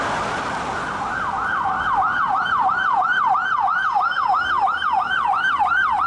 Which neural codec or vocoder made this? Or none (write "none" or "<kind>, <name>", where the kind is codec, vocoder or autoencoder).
none